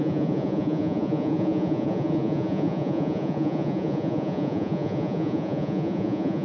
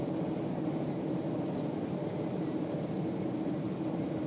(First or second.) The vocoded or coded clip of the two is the first